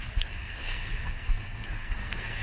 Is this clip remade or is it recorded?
remade